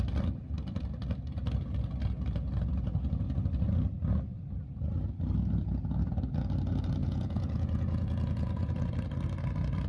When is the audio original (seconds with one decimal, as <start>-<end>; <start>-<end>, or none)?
0.0-7.0; 8.9-9.9